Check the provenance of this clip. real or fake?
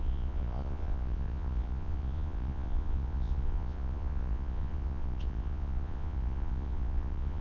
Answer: fake